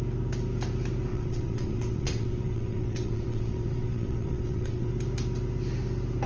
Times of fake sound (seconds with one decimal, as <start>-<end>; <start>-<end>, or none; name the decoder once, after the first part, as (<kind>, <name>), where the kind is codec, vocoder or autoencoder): 1.1-4.9 (vocoder, WaveNeXt)